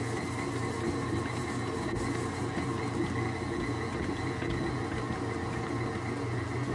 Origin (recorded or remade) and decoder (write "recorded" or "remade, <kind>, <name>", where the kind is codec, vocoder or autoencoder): recorded